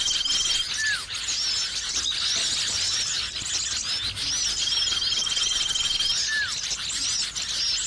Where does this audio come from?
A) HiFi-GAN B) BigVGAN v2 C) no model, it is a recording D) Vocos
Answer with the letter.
C